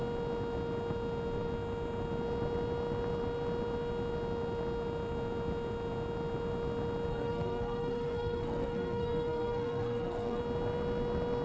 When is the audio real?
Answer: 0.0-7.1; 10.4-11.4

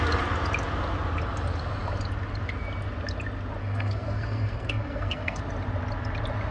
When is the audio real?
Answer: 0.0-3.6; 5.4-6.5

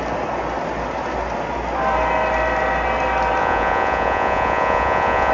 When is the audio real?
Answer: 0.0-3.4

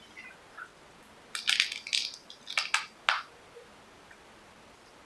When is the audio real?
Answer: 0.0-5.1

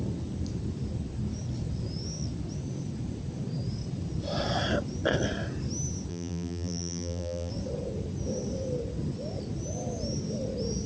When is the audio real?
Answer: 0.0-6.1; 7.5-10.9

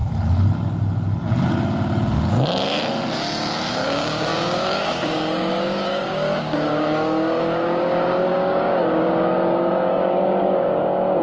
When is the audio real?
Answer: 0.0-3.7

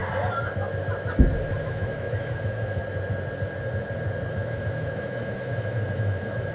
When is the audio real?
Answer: 0.0-1.6; 2.8-4.3